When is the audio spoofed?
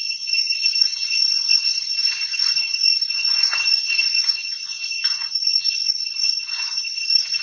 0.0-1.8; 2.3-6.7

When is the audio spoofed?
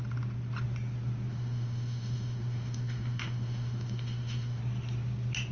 1.3-4.6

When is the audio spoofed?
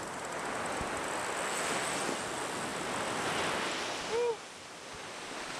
none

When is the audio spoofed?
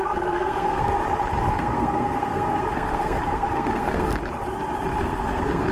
0.0-1.0; 1.5-4.1; 5.0-5.7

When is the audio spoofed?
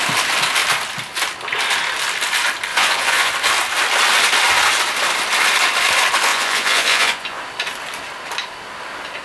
2.7-3.3; 6.3-7.4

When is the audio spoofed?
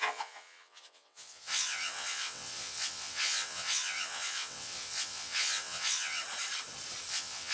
0.0-6.2; 7.1-7.5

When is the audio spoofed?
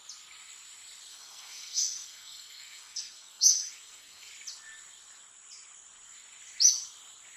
1.1-4.3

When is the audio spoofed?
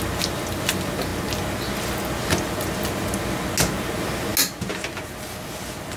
none